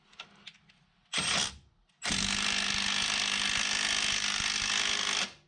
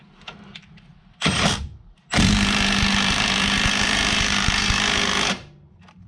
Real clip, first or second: first